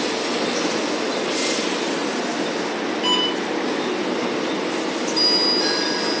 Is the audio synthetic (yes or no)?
no